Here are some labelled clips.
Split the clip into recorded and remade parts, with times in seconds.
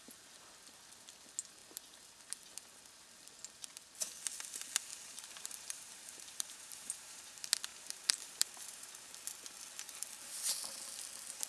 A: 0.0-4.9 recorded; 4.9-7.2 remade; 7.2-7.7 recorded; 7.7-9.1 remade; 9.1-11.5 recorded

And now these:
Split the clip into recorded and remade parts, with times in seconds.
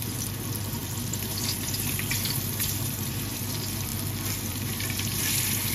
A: 0.0-3.9 remade; 3.9-4.5 recorded; 4.5-5.7 remade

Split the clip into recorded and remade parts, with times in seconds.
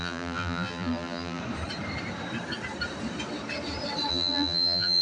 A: 0.0-1.4 remade; 1.4-4.1 recorded; 4.1-5.0 remade